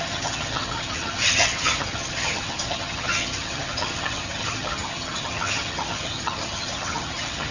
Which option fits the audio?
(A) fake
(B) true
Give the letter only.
A